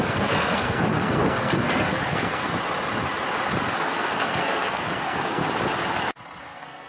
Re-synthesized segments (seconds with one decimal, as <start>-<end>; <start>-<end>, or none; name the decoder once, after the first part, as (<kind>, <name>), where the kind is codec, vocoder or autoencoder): 0.0-2.5 (codec, SNAC); 3.8-5.4; 6.4-6.9